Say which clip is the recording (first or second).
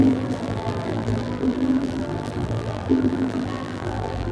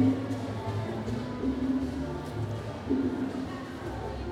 second